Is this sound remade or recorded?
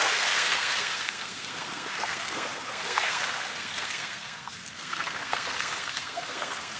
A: remade